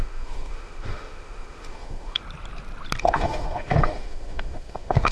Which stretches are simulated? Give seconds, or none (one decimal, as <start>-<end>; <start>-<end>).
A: 0.0-2.2; 3.0-5.1